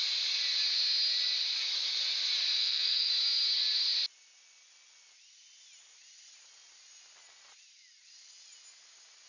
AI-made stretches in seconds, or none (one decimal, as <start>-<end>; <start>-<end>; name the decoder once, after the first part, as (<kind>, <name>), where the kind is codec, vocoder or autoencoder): 2.6-3.1 (codec, SNAC)